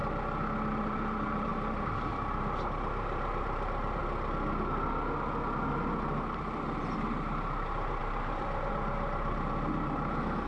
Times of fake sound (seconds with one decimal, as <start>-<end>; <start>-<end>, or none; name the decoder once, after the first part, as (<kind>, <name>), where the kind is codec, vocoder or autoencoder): 0.7-4.0 (vocoder, BigVGAN v2); 6.8-10.5